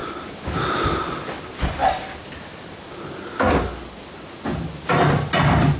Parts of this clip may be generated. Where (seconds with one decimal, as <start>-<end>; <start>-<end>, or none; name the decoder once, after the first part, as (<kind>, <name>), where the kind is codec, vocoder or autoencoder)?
none